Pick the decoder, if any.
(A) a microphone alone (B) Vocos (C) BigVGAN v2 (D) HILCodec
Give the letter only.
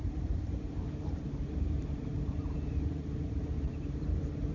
C